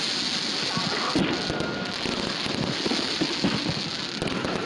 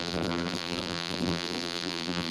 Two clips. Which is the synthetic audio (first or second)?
second